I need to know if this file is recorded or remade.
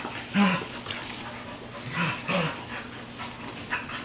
recorded